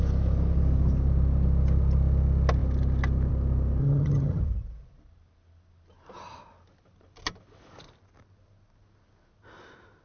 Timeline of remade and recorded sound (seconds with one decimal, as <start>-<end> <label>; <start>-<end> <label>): 0.0-3.8 recorded; 3.8-4.4 remade; 4.4-10.0 recorded